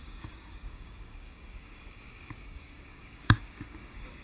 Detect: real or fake fake